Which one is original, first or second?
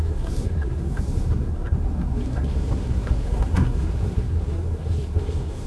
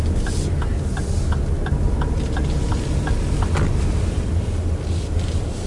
second